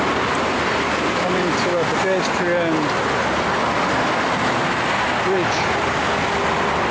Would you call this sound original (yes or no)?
yes